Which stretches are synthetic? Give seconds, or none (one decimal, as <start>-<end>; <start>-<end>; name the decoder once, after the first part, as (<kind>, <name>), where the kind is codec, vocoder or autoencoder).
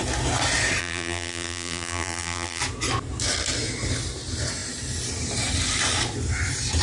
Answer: 0.8-2.6 (vocoder, BigVGAN v2)